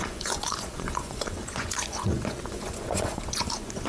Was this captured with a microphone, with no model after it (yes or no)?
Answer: no